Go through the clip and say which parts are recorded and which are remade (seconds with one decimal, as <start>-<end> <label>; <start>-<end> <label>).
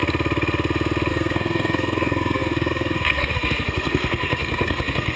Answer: 0.0-1.1 recorded; 1.1-5.2 remade